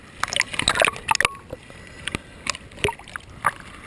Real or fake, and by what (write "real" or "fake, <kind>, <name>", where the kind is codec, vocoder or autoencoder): real